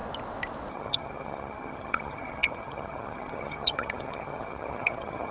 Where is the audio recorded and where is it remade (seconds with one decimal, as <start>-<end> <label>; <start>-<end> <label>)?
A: 0.0-0.7 recorded; 0.7-5.3 remade